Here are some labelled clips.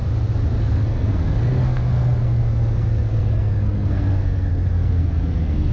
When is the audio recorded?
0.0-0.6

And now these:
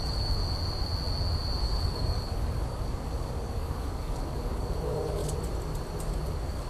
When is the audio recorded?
0.4-1.6; 5.2-6.3

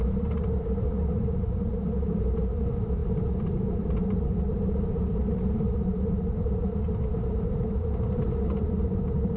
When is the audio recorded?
none

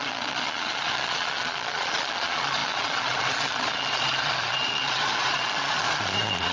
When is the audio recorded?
none

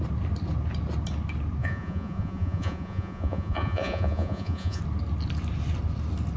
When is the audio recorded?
0.0-1.6; 4.8-6.4

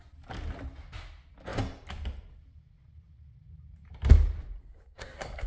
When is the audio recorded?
0.0-4.6

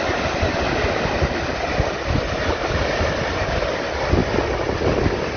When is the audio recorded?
0.0-5.4